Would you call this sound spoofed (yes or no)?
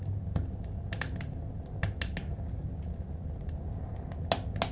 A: no